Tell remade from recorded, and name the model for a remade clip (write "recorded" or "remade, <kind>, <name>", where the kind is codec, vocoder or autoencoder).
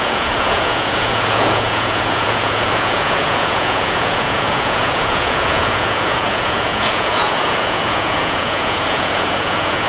remade, vocoder, Vocos